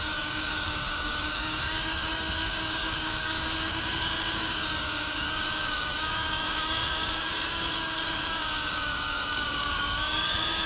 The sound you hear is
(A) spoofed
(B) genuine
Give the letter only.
A